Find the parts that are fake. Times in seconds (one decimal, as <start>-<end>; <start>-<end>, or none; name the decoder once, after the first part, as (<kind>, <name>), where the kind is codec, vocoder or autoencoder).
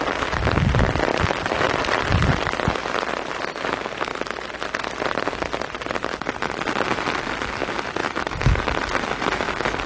none